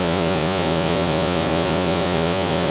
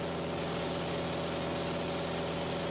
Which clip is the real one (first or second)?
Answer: second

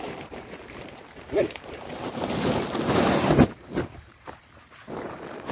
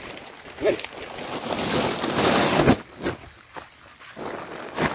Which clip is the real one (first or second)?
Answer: second